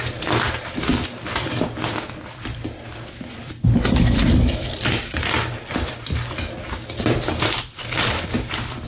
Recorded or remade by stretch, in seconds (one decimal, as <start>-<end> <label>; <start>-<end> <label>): 0.0-8.9 remade